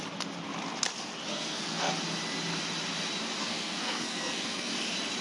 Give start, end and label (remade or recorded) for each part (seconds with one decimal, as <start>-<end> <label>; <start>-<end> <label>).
0.0-1.3 recorded; 1.3-1.9 remade; 1.9-3.4 recorded; 3.4-4.7 remade; 4.7-5.2 recorded

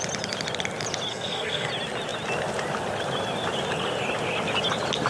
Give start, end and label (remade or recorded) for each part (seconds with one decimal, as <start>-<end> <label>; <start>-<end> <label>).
0.0-1.1 recorded; 1.1-1.7 remade; 1.7-5.1 recorded

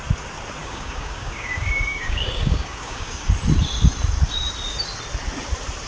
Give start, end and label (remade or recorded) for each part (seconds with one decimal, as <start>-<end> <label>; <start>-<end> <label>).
0.0-0.6 recorded; 0.6-3.2 remade; 3.2-5.9 recorded

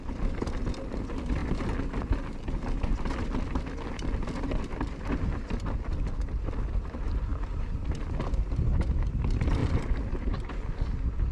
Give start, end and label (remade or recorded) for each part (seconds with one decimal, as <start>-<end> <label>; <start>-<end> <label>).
0.0-11.3 recorded